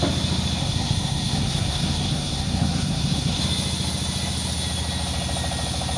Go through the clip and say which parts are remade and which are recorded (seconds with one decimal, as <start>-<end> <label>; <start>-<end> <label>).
0.0-0.6 recorded; 0.6-3.4 remade; 3.4-6.0 recorded